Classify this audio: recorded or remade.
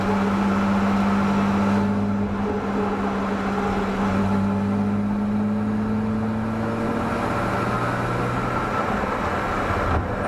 recorded